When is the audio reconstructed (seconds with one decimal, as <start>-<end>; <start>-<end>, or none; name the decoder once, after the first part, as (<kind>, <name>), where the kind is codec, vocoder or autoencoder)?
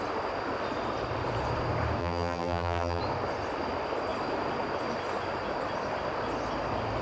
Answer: 2.0-3.0 (vocoder, BigVGAN v2)